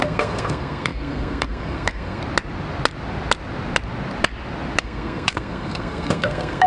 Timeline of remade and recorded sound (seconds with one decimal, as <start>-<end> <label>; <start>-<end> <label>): 0.0-2.2 remade; 2.2-4.8 recorded; 4.8-6.7 remade